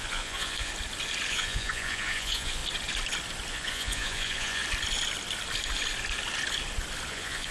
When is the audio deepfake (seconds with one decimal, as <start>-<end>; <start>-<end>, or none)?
0.0-0.7; 1.3-2.6; 3.5-4.6; 7.1-7.5